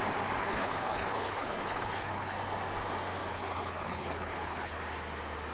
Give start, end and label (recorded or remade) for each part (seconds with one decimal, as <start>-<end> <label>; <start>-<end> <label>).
0.0-0.4 recorded; 0.4-2.4 remade; 2.4-3.3 recorded; 3.3-4.8 remade; 4.8-5.5 recorded